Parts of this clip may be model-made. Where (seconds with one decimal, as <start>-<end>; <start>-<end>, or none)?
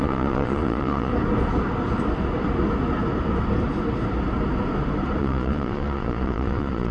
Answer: 0.0-1.1; 5.2-6.9